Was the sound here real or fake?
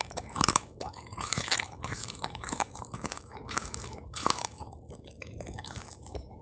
fake